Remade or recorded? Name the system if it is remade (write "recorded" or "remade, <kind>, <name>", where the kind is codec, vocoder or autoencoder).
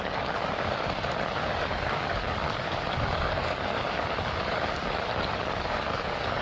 remade, codec, DAC